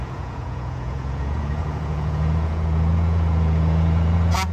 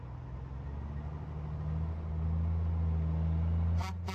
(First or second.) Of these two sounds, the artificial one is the first